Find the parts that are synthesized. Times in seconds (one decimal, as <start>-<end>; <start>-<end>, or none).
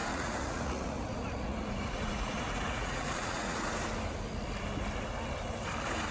0.0-3.7